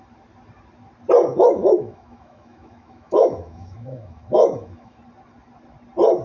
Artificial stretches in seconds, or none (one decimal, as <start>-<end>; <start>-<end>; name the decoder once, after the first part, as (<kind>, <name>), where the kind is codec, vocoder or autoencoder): 1.3-5.0 (autoencoder, DAC-VAE)